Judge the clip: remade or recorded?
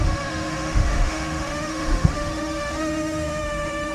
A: remade